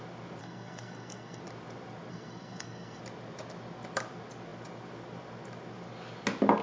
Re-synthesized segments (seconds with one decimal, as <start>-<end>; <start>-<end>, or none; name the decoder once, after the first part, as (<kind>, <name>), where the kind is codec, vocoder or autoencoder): 0.4-1.4 (codec, SNAC); 2.1-3.0